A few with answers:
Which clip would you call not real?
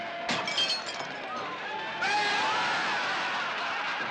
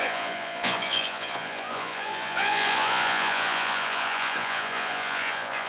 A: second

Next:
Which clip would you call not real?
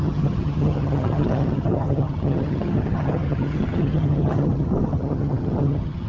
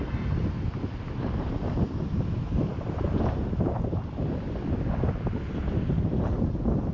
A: first